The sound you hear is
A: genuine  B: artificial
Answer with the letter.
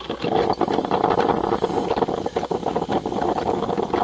A